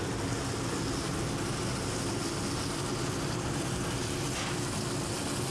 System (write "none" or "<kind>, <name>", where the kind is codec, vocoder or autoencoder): none